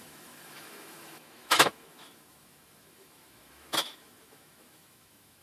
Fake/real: fake